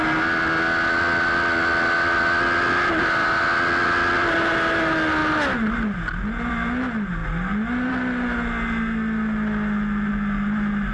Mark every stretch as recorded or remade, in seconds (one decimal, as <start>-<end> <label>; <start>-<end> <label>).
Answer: 0.0-10.9 recorded